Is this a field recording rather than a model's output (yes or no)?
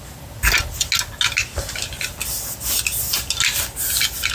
yes